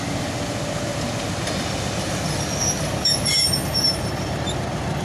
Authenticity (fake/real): real